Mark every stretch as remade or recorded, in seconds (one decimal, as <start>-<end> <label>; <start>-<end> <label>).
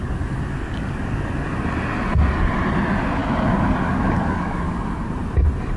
0.0-1.2 remade; 1.2-3.2 recorded; 3.2-5.1 remade; 5.1-5.8 recorded